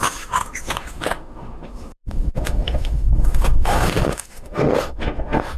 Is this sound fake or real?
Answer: fake